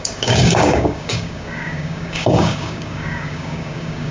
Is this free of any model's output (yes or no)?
no